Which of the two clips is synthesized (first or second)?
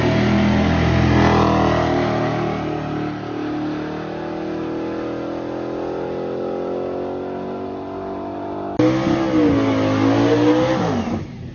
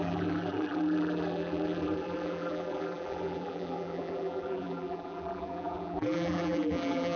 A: second